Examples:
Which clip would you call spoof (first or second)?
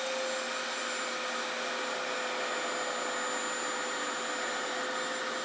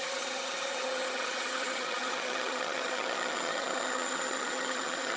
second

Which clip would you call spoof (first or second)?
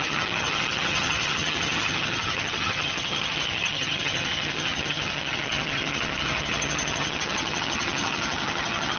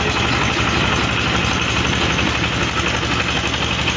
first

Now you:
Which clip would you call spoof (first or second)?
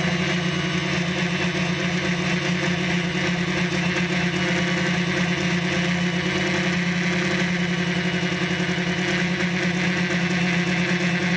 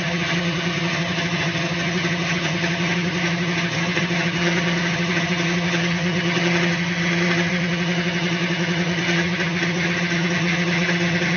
second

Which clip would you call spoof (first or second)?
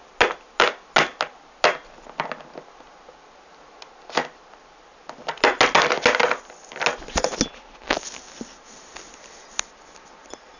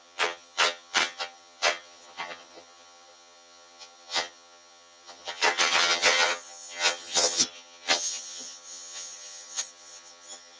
second